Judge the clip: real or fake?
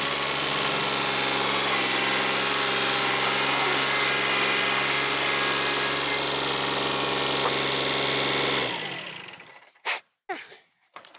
real